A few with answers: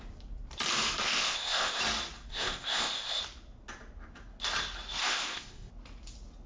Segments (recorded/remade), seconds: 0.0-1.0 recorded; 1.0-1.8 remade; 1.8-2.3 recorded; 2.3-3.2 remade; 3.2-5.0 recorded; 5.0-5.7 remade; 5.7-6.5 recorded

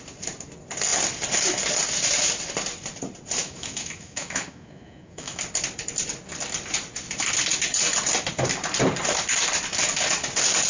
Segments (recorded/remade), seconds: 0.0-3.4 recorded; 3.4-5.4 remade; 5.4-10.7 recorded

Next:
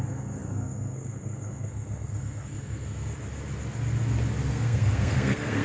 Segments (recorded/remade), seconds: 0.0-3.1 remade; 3.1-4.5 recorded; 4.5-5.6 remade

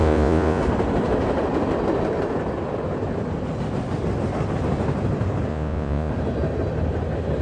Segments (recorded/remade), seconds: 0.0-0.6 remade; 0.6-5.5 recorded; 5.5-6.1 remade; 6.1-7.4 recorded